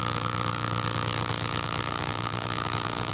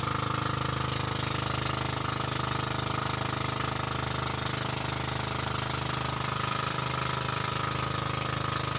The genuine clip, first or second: second